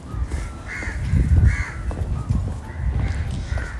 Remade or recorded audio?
recorded